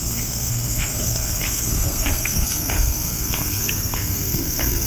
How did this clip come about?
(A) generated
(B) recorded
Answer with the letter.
A